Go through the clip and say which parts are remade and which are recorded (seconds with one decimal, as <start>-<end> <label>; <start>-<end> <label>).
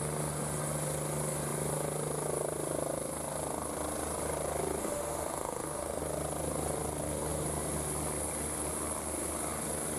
0.0-4.8 recorded; 4.8-6.0 remade; 6.0-10.0 recorded